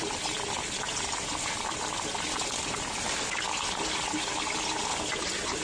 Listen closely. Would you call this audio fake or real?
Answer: real